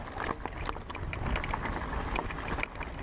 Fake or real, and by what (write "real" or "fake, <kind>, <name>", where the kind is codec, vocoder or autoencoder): real